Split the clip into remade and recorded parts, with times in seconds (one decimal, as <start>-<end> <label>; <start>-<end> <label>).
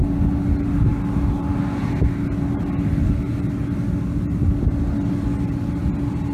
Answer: 0.0-6.3 recorded